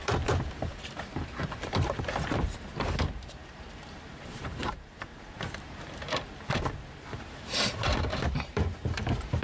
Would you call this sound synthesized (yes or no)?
yes